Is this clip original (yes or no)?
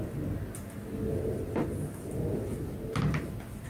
yes